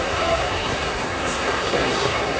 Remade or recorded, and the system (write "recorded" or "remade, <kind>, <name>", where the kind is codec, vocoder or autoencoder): remade, codec, SNAC